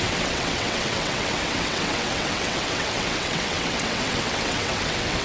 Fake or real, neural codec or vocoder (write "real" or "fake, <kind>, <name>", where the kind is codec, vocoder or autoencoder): fake, vocoder, WaveNeXt